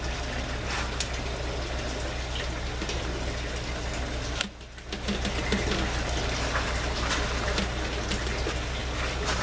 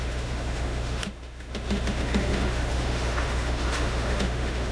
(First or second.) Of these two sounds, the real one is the first